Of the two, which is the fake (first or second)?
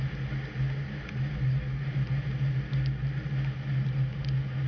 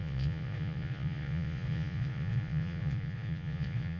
second